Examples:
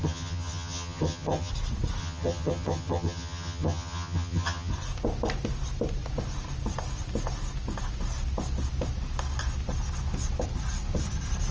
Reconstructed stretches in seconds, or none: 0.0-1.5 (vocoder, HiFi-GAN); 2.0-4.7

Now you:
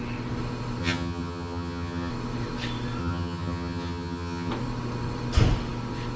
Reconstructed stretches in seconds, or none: 0.8-2.1 (vocoder, HiFi-GAN); 3.0-4.5

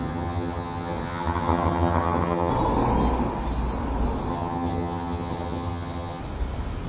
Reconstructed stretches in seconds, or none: 0.0-2.5 (vocoder, HiFi-GAN); 4.3-6.2

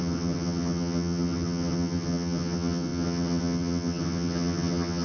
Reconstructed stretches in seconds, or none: 0.0-5.0 (vocoder, HiFi-GAN)

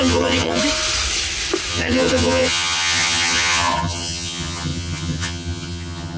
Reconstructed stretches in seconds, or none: 0.0-0.6 (vocoder, HiFi-GAN); 1.7-6.2

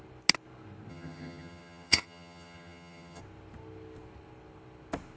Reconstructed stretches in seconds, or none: 0.9-3.2 (vocoder, HiFi-GAN)

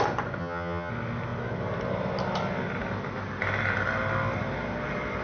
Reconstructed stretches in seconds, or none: 0.4-0.9 (vocoder, HiFi-GAN)